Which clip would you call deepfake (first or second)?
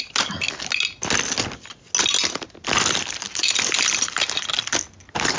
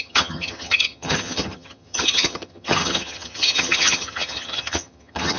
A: second